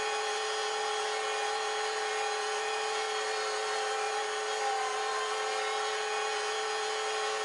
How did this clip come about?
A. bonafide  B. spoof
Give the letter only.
A